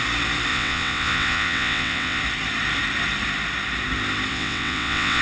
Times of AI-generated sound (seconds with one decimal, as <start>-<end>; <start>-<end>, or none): 0.5-2.2; 4.3-5.2